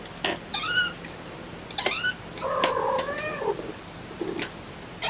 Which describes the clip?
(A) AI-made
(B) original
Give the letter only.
B